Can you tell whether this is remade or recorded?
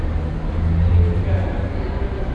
recorded